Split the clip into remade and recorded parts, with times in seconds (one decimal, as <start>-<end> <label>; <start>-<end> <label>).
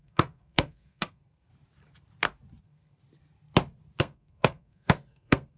0.0-1.5 remade; 1.5-2.6 recorded; 2.6-3.0 remade; 3.0-4.0 recorded; 4.0-5.6 remade